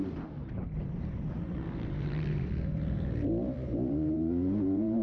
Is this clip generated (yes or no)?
yes